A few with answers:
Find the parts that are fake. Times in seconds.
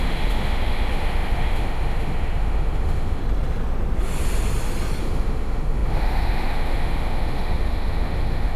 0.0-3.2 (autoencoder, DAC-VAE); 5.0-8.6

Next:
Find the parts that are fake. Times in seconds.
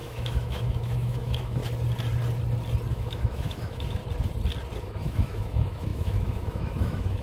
0.0-1.6 (autoencoder, DAC-VAE); 2.9-4.0; 4.8-7.2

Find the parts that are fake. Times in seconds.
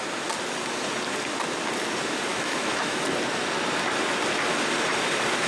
2.3-3.0 (autoencoder, DAC-VAE)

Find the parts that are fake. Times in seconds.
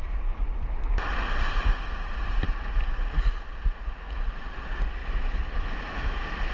5.0-6.5 (autoencoder, DAC-VAE)